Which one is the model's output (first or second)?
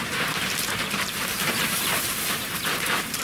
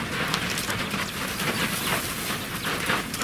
first